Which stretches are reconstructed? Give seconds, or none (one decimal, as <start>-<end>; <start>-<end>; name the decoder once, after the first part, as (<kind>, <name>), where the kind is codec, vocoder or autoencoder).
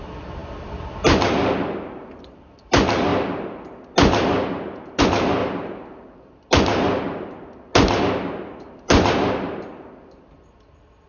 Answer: 0.0-3.1 (vocoder, BigVGAN v2); 5.0-5.4; 8.0-11.1